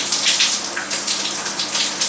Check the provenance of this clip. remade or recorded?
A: recorded